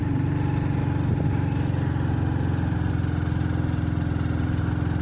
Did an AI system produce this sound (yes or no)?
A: no